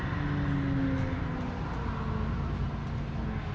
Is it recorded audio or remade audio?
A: recorded